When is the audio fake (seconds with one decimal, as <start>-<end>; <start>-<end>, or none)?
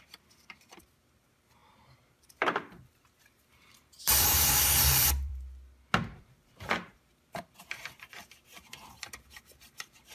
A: 0.0-5.3; 6.2-10.1